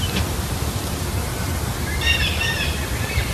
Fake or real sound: real